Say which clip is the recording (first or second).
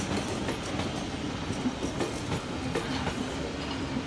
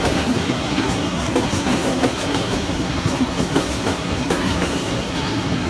first